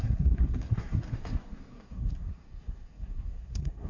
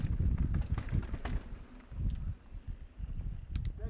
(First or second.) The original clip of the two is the second